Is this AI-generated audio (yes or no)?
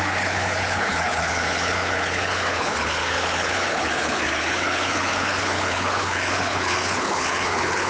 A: yes